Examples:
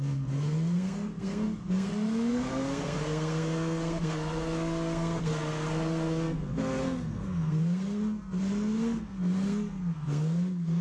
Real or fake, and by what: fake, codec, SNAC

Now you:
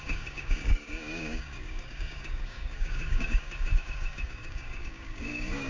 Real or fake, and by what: fake, codec, DAC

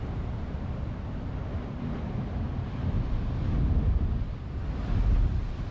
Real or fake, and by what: real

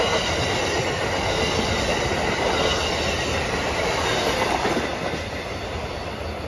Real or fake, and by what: real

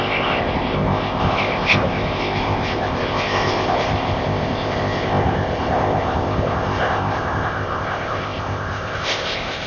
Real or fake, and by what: fake, codec, ZipCodec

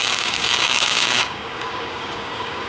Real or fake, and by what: fake, codec, DAC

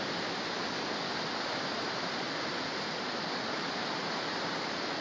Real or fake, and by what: real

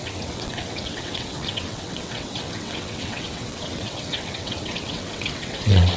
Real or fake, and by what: fake, vocoder, WaveNeXt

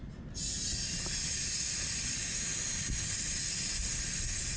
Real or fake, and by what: real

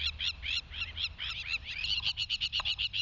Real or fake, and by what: real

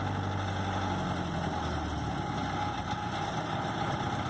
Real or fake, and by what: real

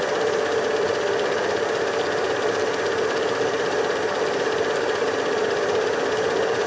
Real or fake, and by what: real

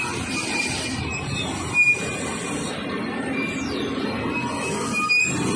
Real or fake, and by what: real